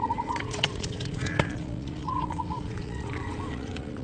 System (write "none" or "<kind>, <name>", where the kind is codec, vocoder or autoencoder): vocoder, Vocos